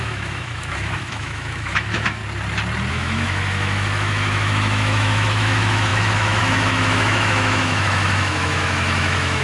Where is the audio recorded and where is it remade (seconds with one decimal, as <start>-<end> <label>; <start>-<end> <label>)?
0.0-2.2 remade; 2.2-2.9 recorded; 2.9-9.4 remade